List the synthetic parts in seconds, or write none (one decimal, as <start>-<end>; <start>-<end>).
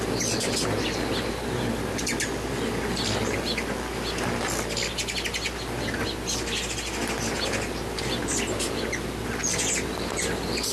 none